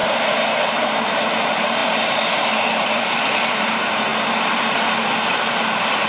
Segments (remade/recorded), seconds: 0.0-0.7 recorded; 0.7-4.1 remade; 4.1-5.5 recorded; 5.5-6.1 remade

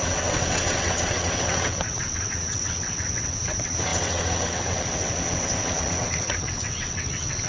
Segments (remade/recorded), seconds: 0.0-7.5 remade

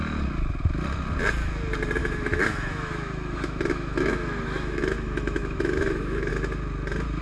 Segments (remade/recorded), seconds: 0.0-2.0 recorded; 2.0-6.3 remade; 6.3-7.2 recorded

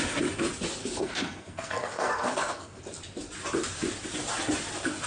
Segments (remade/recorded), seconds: 0.0-0.8 recorded; 0.8-2.8 remade; 2.8-5.1 recorded